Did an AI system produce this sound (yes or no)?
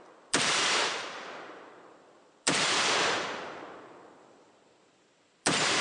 yes